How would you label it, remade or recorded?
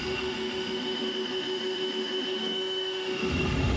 remade